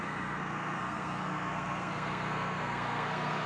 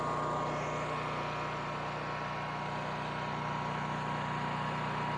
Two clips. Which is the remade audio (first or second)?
first